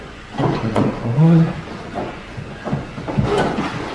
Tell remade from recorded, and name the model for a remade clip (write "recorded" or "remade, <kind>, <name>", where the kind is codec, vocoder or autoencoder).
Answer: remade, vocoder, Vocos